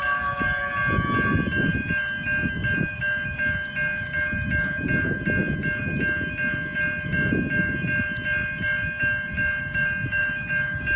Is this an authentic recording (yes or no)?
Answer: yes